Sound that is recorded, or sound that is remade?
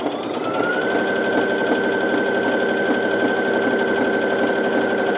recorded